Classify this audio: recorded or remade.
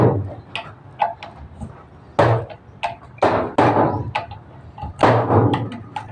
recorded